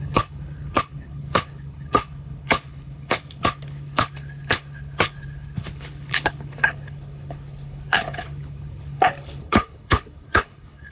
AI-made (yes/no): yes